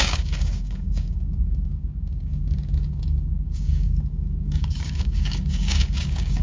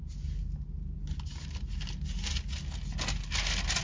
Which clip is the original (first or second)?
second